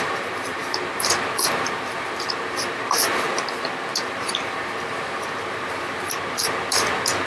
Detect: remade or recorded remade